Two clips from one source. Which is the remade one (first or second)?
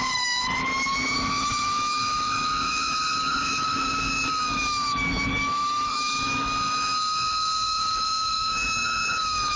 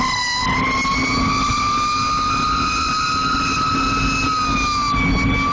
first